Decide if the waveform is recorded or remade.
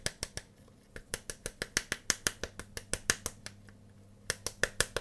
recorded